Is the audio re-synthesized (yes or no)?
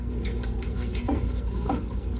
yes